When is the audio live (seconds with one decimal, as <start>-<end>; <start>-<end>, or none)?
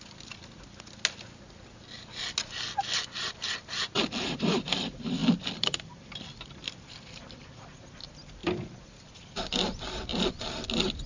0.0-5.2; 6.5-11.1